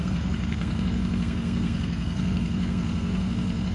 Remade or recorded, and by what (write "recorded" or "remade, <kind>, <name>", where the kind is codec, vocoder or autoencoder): remade, codec, SNAC